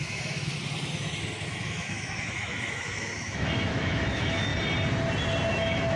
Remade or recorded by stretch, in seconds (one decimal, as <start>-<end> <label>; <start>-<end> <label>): 0.0-0.5 remade; 0.5-1.4 recorded; 1.4-4.5 remade; 4.5-5.5 recorded; 5.5-6.0 remade